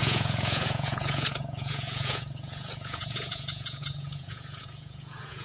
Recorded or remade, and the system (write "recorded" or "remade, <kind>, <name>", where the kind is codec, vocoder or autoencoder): remade, vocoder, Vocos